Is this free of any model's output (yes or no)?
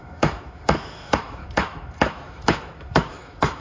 no